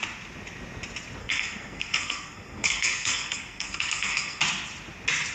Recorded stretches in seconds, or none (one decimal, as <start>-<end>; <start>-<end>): 0.0-1.2; 4.4-5.3